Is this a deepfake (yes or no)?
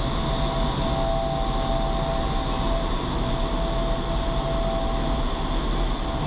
no